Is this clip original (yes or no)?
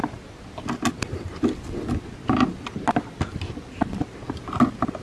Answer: yes